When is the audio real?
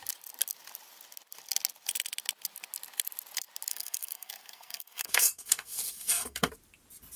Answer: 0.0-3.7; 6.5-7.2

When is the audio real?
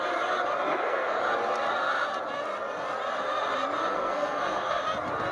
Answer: 0.0-0.7; 1.2-3.9; 4.8-5.3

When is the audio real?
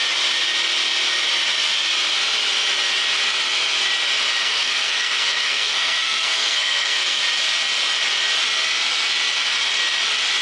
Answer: 0.0-4.4; 7.2-10.4